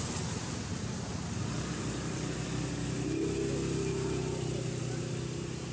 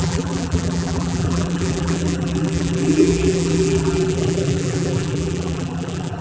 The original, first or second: first